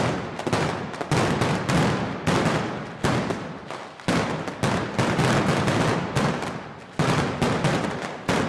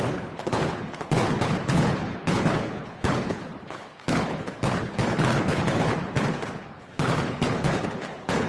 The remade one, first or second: second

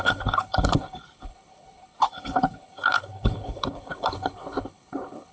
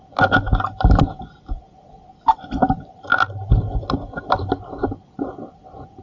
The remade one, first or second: first